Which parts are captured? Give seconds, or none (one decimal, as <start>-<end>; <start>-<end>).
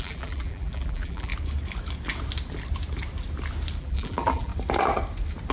1.3-3.8; 4.5-5.5